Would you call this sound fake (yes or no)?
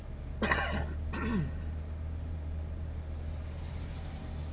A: no